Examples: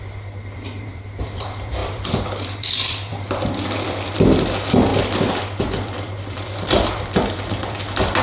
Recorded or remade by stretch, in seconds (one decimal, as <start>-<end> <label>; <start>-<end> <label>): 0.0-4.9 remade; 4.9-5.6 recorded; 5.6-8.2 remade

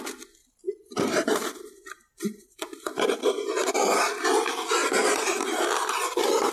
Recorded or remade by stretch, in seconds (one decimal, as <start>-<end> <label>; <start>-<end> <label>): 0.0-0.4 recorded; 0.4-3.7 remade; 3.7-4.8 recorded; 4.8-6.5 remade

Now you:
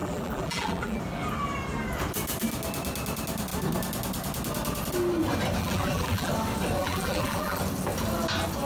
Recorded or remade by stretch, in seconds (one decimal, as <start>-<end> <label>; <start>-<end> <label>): 0.0-1.0 remade; 1.0-5.6 recorded; 5.6-6.3 remade; 6.3-6.8 recorded; 6.8-7.6 remade; 7.6-8.7 recorded

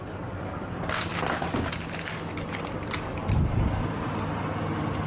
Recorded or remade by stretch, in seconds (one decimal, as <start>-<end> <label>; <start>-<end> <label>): 0.0-1.1 remade; 1.1-1.7 recorded; 1.7-5.1 remade